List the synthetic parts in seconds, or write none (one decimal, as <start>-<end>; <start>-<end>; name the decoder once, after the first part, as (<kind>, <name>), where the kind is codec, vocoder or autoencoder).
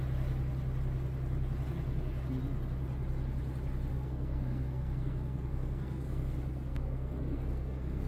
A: 3.9-8.1 (codec, SNAC)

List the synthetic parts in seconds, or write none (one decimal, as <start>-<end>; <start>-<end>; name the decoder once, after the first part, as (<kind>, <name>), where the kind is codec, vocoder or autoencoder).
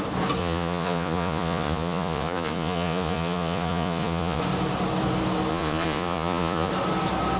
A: 0.4-4.4 (vocoder, Vocos); 5.5-6.7